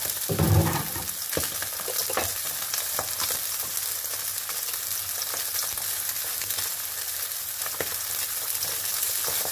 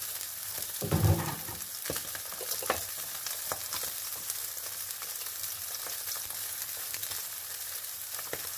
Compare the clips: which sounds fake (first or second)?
second